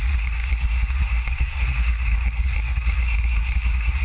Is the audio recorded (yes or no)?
no